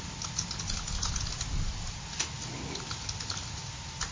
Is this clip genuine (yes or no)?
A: yes